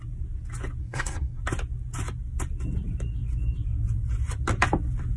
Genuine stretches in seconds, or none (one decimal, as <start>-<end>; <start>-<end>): 0.0-0.8; 1.4-5.2